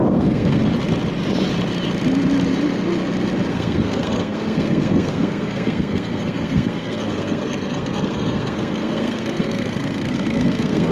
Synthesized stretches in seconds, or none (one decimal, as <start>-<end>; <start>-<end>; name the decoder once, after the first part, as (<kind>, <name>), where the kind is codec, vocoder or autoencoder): 0.0-0.6 (codec, SNAC); 3.5-10.9